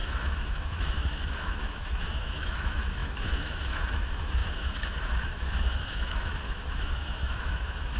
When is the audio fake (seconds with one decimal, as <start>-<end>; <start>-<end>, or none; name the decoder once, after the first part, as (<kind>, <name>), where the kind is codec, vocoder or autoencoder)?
0.0-8.0 (autoencoder, DAC-VAE)